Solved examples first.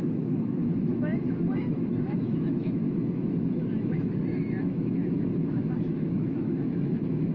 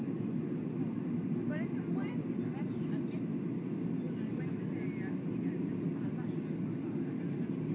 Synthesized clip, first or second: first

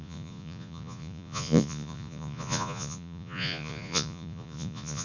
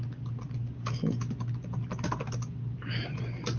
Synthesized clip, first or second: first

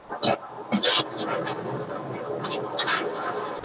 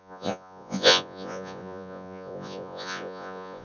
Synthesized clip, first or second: second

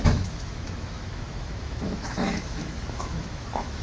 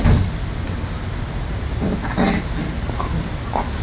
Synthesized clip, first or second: first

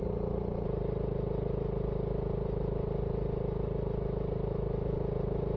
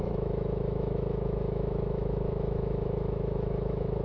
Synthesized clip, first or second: second